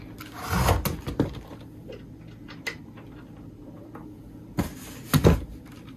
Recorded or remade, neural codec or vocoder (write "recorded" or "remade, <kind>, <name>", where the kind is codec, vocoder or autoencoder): recorded